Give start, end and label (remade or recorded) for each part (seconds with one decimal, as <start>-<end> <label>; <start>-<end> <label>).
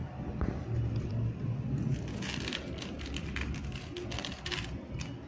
0.0-1.9 remade; 1.9-5.3 recorded